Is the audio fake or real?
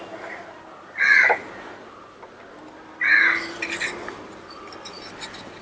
real